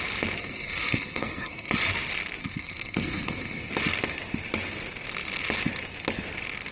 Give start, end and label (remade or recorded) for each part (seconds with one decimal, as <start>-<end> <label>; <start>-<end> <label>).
0.0-0.4 recorded; 0.4-1.7 remade; 1.7-2.4 recorded; 2.4-3.7 remade; 3.7-6.7 recorded